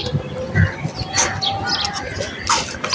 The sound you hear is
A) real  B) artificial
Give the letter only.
A